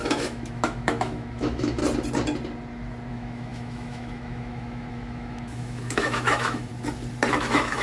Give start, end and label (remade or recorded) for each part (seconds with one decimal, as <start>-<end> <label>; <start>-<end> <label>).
0.0-1.8 remade; 1.8-3.1 recorded; 3.1-6.7 remade; 6.7-7.3 recorded; 7.3-7.8 remade